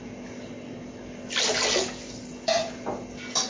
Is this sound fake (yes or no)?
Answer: no